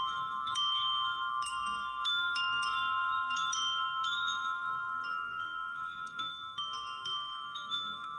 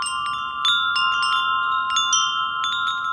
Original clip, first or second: second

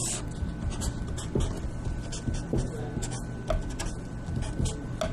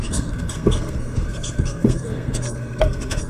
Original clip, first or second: first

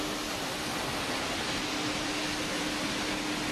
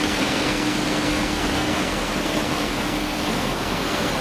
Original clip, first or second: first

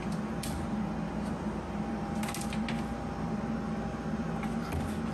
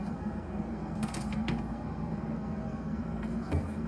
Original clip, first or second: first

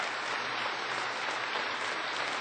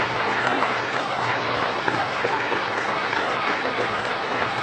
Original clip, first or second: first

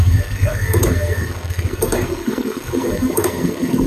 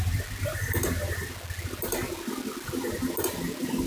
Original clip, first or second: second